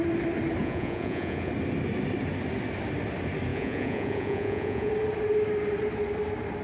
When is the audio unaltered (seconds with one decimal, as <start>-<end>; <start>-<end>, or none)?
0.0-0.6; 1.5-3.5; 4.9-6.6

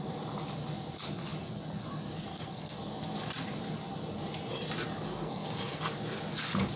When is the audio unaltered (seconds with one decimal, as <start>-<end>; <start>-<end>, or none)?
0.0-2.3; 2.8-5.1; 5.8-6.8